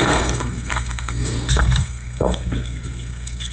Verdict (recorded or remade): remade